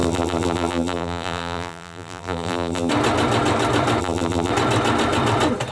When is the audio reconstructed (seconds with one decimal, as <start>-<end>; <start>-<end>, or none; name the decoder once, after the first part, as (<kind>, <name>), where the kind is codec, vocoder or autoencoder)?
0.0-2.9 (vocoder, BigVGAN v2); 4.0-4.5